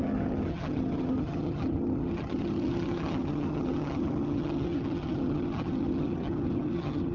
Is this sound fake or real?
fake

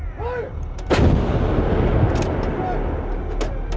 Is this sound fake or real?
real